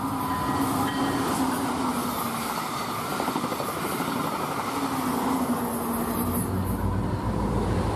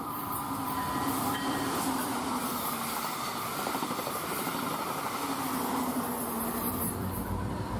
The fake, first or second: second